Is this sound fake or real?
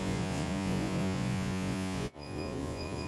fake